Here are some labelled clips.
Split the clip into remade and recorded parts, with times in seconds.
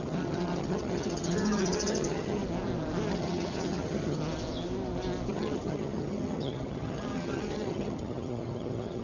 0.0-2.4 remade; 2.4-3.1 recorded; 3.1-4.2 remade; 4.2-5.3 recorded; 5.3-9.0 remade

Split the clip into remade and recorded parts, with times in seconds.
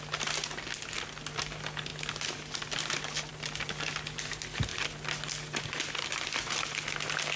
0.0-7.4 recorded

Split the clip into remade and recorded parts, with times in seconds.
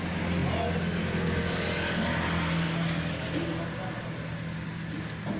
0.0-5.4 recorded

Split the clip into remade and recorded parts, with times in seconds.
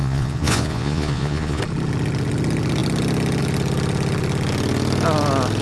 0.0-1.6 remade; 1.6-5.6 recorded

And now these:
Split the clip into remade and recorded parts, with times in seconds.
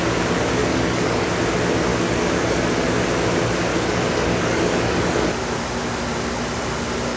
0.0-0.6 recorded; 0.6-1.3 remade; 1.3-1.9 recorded; 1.9-2.6 remade; 2.6-3.7 recorded; 3.7-5.3 remade; 5.3-7.2 recorded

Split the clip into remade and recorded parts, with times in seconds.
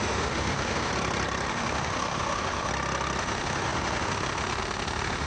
0.0-0.9 remade; 0.9-1.5 recorded; 1.5-2.7 remade; 2.7-3.2 recorded; 3.2-5.3 remade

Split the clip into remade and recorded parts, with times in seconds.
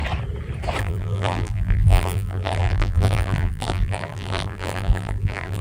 0.0-0.8 recorded; 0.8-5.6 remade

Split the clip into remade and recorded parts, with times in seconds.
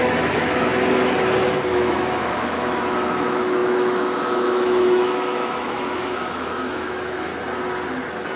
0.0-0.7 remade; 0.7-1.7 recorded; 1.7-7.3 remade; 7.3-8.4 recorded